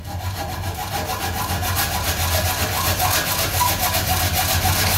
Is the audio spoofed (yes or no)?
no